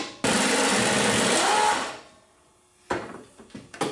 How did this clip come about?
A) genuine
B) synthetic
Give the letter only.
A